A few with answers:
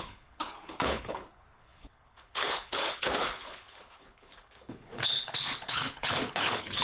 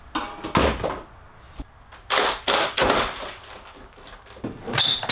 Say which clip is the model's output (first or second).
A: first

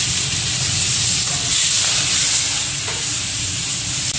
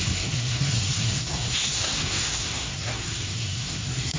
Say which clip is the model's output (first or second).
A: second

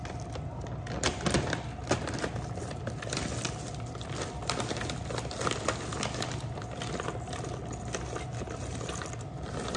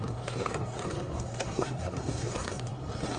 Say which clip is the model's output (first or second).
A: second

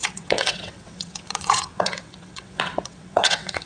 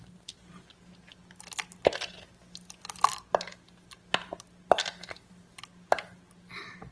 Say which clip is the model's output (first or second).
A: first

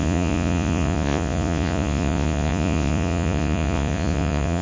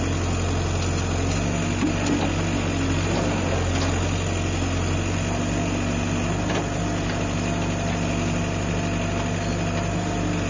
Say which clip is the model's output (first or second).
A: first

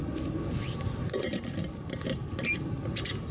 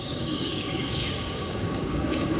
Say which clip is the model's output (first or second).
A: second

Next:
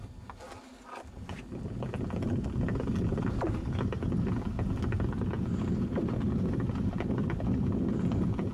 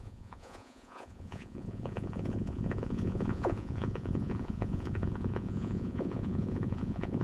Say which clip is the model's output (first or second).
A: second